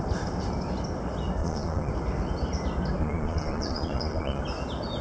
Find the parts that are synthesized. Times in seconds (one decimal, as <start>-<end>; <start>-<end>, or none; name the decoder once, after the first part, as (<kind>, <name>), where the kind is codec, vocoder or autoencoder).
1.4-1.9 (vocoder, Vocos); 3.0-4.4